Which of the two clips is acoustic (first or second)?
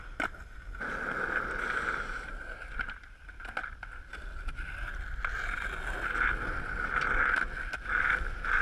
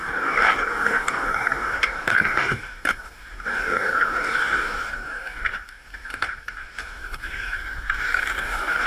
first